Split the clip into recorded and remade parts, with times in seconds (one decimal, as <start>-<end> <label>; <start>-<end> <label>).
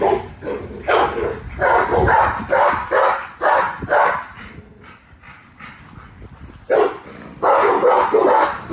0.0-1.9 recorded; 1.9-2.4 remade; 2.4-8.7 recorded